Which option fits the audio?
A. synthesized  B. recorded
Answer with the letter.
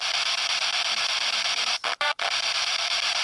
A